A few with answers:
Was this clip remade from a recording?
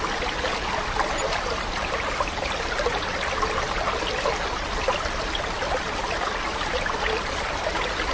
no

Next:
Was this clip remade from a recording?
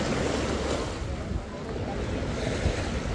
no